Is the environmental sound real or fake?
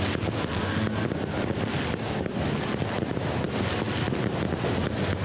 real